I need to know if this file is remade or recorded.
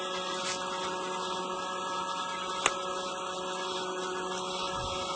recorded